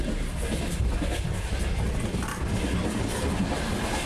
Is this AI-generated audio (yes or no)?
no